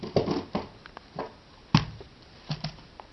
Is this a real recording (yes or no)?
yes